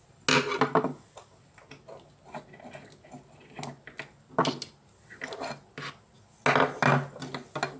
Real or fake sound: real